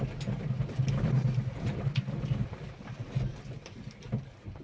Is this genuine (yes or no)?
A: yes